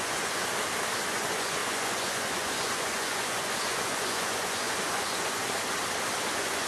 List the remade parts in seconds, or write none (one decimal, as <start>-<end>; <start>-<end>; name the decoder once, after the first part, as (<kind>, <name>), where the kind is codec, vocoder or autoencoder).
0.0-0.4 (vocoder, Vocos); 1.1-5.4; 6.3-6.7